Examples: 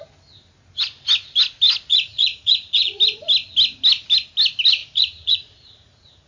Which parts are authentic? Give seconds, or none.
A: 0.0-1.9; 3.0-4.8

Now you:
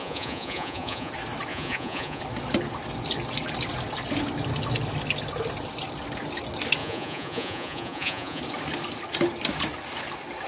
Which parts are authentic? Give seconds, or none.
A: 1.1-1.5; 2.2-6.8; 8.4-10.5

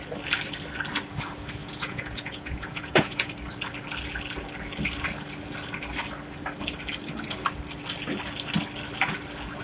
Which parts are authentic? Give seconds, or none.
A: 0.0-1.6; 3.3-9.6

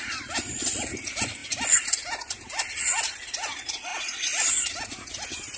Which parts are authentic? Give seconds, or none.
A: 0.0-5.6

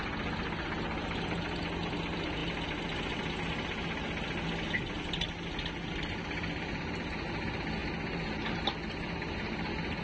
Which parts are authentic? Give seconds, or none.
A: 0.0-10.0

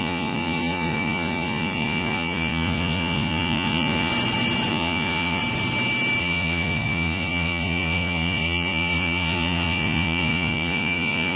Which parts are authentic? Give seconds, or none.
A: 4.1-4.7; 5.4-6.2

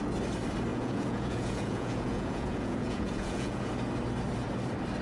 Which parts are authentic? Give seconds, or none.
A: 0.0-0.7; 3.7-5.0